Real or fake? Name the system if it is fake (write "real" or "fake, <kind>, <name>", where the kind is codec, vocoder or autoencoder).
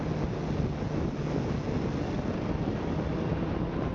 real